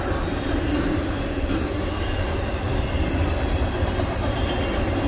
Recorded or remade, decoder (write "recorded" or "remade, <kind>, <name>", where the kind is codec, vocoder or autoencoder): recorded